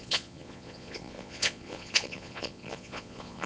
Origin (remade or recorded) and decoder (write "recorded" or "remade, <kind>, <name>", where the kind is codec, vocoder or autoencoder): remade, vocoder, Vocos